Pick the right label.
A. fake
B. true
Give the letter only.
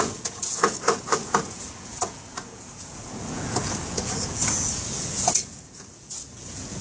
A